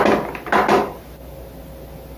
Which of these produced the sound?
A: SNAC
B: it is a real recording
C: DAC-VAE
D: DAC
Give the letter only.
B